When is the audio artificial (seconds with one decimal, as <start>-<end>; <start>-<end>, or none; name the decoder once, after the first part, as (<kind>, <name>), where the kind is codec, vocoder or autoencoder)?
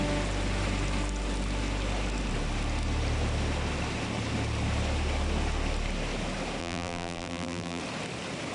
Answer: 6.6-7.8 (vocoder, BigVGAN v2)